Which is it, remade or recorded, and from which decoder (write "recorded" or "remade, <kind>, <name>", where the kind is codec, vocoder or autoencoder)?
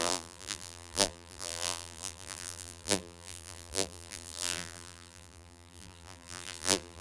remade, vocoder, BigVGAN v2